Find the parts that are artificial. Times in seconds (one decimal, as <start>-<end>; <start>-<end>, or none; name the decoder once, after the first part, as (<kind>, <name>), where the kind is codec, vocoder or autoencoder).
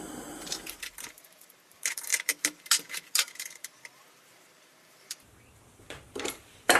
0.0-6.8 (vocoder, BigVGAN v2)